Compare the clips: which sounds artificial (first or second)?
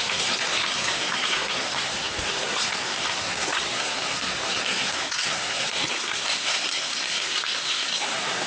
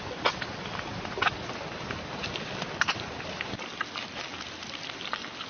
first